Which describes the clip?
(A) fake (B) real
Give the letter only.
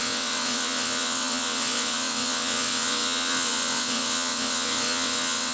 A